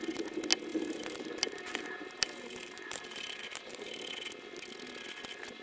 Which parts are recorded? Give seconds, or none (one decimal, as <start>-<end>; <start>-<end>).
0.0-0.7; 3.9-5.6

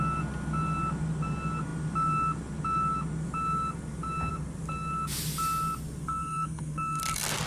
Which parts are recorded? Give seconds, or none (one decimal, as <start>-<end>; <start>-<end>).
0.0-6.0; 7.0-7.5

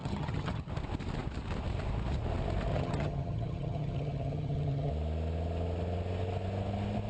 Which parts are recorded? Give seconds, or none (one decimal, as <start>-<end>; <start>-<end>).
0.7-2.7; 4.9-7.1